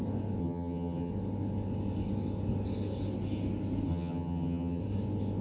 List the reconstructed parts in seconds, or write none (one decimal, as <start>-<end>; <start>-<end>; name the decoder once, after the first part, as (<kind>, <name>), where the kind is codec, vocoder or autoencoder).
0.4-1.1 (vocoder, HiFi-GAN); 3.9-4.8